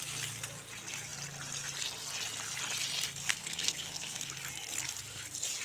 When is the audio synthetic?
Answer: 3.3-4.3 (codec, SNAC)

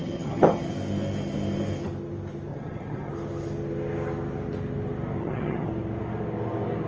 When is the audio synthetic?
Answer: 0.0-0.7 (vocoder, HiFi-GAN); 2.5-3.1; 5.2-5.7

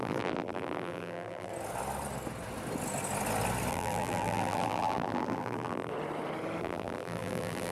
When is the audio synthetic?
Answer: 0.0-1.5 (vocoder, BigVGAN v2); 3.7-5.9; 6.6-7.7

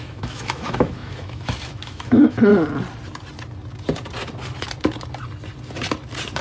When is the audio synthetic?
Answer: 0.0-2.5 (autoencoder, DAC-VAE)

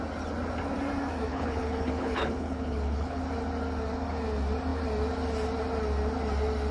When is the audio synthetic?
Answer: 1.3-3.2 (codec, HILCodec)

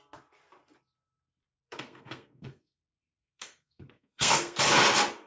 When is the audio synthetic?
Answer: 1.4-4.6 (codec, SNAC)